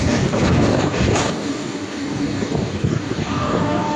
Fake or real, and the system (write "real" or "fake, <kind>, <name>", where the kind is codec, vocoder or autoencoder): fake, codec, DAC